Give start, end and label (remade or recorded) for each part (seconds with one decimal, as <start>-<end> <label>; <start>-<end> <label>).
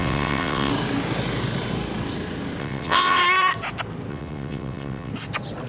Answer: 0.0-0.7 remade; 0.7-2.6 recorded; 2.6-3.2 remade; 3.2-4.1 recorded; 4.1-5.1 remade; 5.1-5.7 recorded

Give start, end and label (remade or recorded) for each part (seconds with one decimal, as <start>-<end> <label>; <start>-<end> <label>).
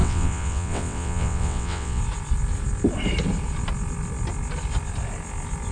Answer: 0.0-2.0 remade; 2.0-5.7 recorded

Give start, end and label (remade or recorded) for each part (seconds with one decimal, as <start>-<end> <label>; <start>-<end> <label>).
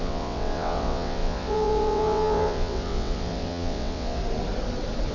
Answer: 0.0-4.2 remade; 4.2-5.1 recorded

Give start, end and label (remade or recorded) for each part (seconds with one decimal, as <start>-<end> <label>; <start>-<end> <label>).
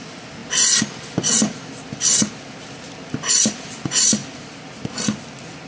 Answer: 0.0-5.7 recorded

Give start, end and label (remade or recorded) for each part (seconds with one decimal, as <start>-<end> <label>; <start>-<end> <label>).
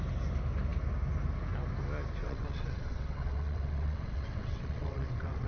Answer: 0.0-2.2 recorded; 2.2-5.5 remade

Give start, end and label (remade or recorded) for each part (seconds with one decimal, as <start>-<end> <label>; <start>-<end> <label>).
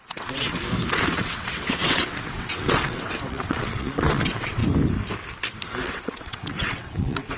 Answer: 0.0-0.6 remade; 0.6-1.1 recorded; 1.1-4.6 remade; 4.6-5.8 recorded; 5.8-7.4 remade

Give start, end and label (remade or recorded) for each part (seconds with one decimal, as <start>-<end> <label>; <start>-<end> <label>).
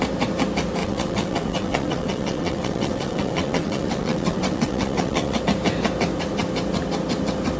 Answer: 0.0-0.8 recorded; 0.8-5.4 remade; 5.4-7.6 recorded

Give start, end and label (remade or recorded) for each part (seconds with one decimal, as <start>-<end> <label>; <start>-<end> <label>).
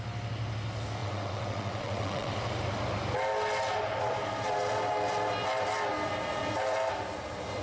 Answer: 0.0-1.0 recorded; 1.0-2.3 remade; 2.3-7.6 recorded